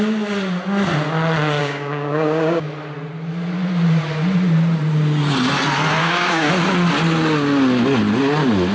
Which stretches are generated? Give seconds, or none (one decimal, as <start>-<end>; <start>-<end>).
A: 1.6-2.7; 6.0-6.5